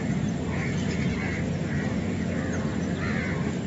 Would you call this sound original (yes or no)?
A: yes